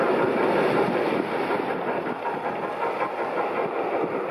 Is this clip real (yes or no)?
yes